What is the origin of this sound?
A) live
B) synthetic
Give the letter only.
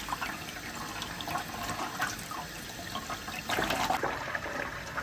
A